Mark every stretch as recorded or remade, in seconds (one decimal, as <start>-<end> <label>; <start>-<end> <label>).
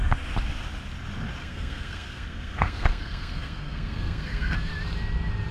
0.0-1.4 recorded; 1.4-4.7 remade; 4.7-5.5 recorded